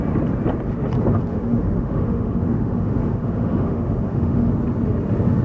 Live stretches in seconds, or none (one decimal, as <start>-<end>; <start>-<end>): 0.0-1.3; 4.5-5.4